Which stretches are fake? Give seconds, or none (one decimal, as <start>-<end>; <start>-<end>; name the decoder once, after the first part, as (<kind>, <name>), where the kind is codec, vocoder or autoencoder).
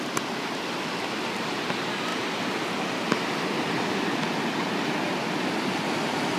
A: none